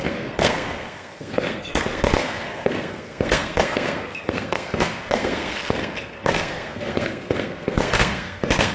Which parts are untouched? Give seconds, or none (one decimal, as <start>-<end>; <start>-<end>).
none